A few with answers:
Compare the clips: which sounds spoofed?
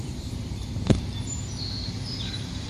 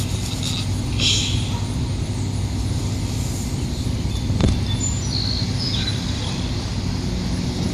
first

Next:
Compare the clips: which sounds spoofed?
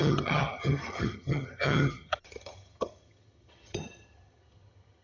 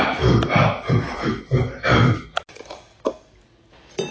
first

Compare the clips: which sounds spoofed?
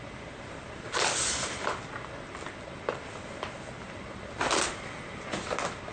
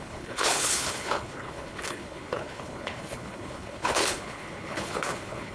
second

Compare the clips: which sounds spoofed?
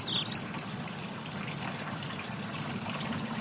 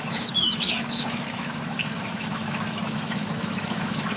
second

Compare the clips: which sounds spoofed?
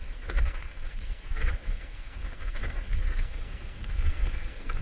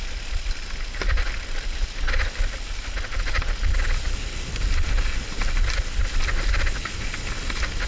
first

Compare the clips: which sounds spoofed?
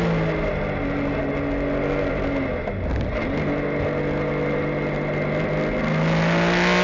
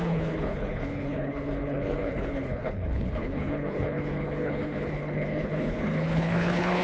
second